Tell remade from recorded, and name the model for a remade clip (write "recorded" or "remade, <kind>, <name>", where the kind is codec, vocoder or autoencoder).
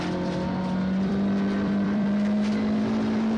remade, vocoder, BigVGAN v2